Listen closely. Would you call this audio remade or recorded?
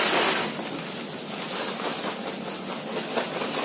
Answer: recorded